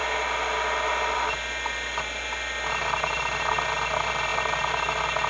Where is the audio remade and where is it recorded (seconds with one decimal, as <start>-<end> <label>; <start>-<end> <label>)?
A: 0.0-5.3 recorded